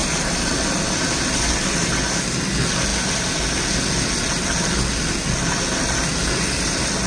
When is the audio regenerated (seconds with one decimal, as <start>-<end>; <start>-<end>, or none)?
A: none